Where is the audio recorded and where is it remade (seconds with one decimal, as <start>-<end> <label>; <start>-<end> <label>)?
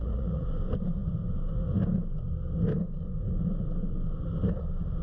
0.0-0.5 remade; 0.5-5.0 recorded